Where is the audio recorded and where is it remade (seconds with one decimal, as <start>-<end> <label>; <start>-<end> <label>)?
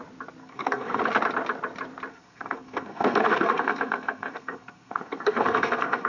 0.0-0.4 recorded; 0.4-1.0 remade; 1.0-2.1 recorded; 2.1-6.1 remade